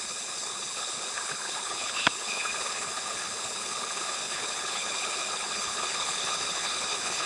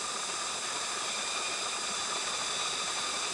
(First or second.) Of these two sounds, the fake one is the first